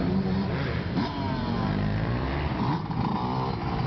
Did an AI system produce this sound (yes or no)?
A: no